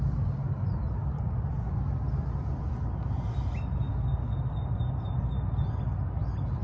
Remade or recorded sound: recorded